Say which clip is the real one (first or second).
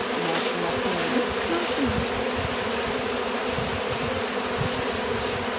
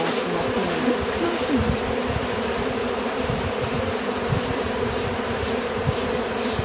first